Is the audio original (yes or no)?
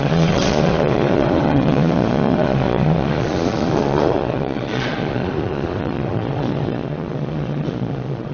no